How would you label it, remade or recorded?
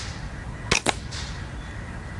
recorded